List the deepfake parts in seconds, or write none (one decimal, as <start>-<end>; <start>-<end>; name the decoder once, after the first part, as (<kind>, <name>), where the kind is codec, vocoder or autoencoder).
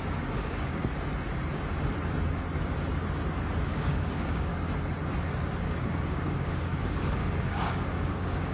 0.0-0.8 (codec, DAC); 3.7-4.5; 5.8-8.5